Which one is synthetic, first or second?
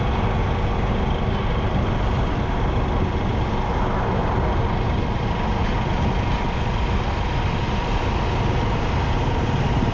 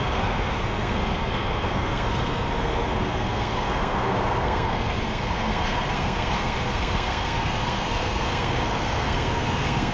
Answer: second